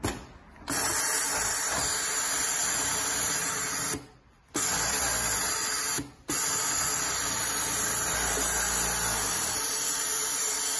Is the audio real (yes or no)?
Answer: yes